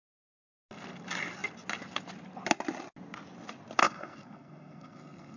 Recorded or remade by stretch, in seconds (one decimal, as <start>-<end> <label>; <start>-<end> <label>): 0.0-3.8 recorded; 3.8-5.4 remade